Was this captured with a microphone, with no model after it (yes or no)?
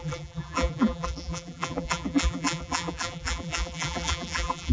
no